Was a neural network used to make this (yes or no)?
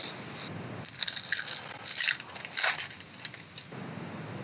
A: no